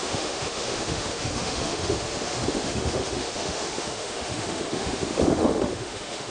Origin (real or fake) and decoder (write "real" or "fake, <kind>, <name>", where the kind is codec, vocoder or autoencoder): fake, autoencoder, DAC-VAE